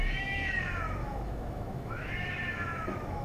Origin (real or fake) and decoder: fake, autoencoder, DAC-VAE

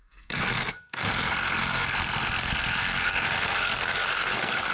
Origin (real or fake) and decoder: fake, codec, SNAC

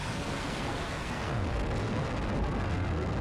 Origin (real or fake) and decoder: fake, codec, SNAC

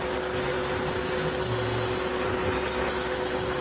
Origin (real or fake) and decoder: real